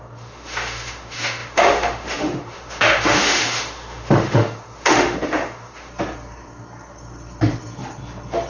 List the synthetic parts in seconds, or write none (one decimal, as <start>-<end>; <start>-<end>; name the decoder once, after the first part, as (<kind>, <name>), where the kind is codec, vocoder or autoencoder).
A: 0.0-5.9 (autoencoder, DAC-VAE)